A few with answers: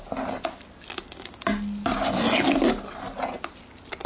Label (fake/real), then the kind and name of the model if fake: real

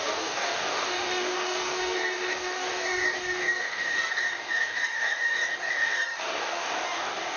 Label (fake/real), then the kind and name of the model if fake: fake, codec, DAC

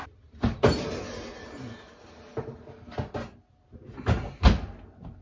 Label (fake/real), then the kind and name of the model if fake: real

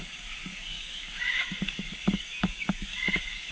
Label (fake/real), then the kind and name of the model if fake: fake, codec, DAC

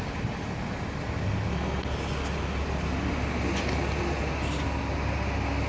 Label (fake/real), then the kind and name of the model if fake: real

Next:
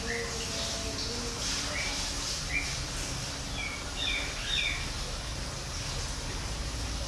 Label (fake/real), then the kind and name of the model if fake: real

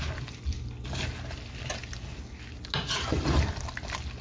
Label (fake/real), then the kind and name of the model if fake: real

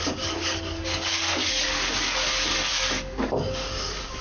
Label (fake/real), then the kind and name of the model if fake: fake, codec, DAC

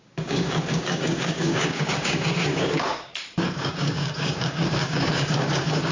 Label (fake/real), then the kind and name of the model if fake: fake, codec, DAC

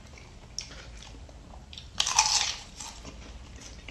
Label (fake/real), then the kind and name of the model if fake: real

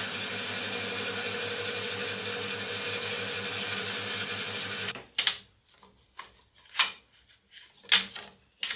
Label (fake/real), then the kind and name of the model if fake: real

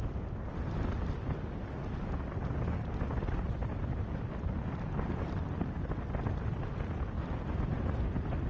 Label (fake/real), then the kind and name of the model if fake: real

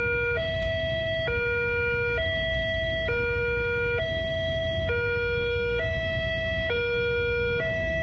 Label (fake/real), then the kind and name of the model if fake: fake, codec, DAC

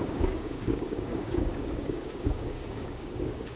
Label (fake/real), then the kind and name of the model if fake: fake, codec, DAC